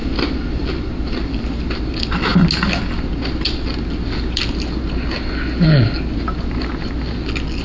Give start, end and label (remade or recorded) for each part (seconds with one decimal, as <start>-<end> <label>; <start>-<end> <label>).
0.0-7.6 recorded